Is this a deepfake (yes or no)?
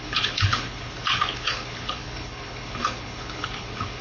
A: yes